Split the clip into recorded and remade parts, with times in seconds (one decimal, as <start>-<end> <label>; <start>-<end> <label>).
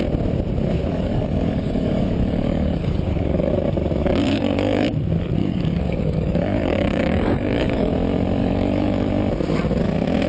0.0-0.9 recorded; 0.9-3.5 remade; 3.5-4.0 recorded; 4.0-4.9 remade; 4.9-5.4 recorded; 5.4-7.9 remade; 7.9-8.4 recorded; 8.4-9.1 remade; 9.1-10.3 recorded